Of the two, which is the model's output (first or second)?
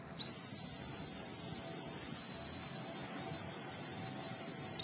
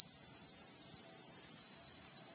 second